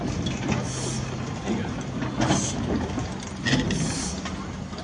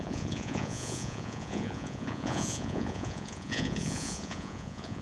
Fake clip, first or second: second